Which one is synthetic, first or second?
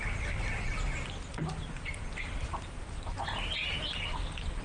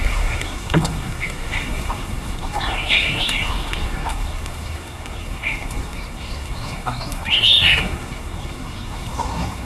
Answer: second